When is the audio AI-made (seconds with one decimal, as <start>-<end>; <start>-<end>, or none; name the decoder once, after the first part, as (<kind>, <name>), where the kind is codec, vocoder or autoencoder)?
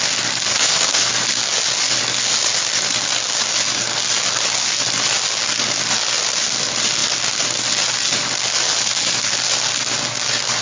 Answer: 0.5-1.1 (codec, SNAC)